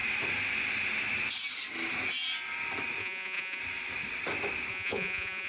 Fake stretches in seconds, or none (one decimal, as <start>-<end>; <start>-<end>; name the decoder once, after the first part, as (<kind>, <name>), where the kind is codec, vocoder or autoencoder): 3.0-3.6 (vocoder, Vocos); 4.7-5.5